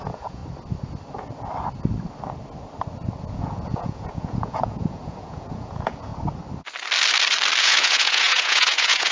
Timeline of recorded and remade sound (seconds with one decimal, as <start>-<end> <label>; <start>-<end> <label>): 0.0-0.4 remade; 0.4-3.2 recorded; 3.2-6.1 remade; 6.1-7.6 recorded; 7.6-9.1 remade